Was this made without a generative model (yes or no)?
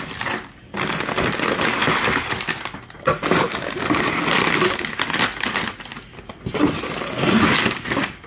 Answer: yes